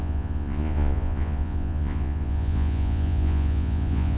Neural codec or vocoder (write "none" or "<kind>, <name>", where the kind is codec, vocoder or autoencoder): vocoder, Vocos